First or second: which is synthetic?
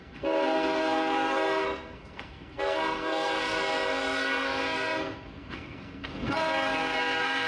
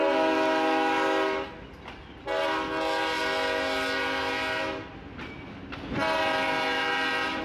first